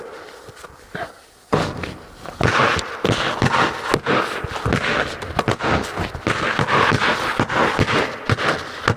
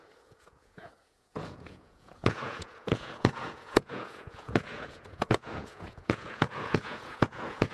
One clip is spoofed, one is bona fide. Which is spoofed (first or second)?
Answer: second